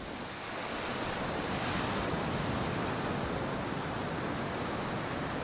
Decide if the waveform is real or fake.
real